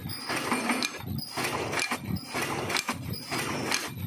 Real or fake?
real